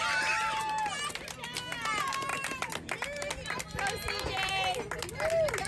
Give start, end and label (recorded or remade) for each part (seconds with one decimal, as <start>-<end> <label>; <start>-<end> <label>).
0.0-5.7 recorded

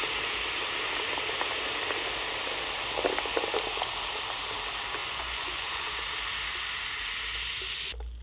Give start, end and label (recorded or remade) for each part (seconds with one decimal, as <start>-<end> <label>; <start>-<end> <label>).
0.0-5.0 recorded; 5.0-6.0 remade; 6.0-8.2 recorded

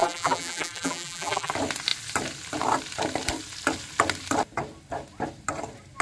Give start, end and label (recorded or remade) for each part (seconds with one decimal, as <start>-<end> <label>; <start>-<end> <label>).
0.0-1.5 remade; 1.5-6.0 recorded